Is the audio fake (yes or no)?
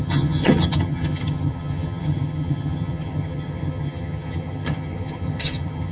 yes